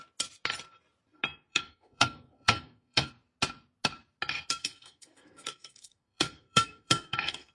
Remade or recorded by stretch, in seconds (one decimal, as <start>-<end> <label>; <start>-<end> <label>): 0.0-1.5 recorded; 1.5-3.1 remade; 3.1-4.6 recorded; 4.6-7.5 remade